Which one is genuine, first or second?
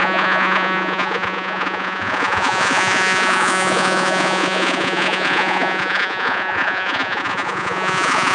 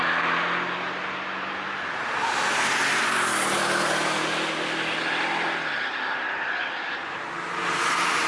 second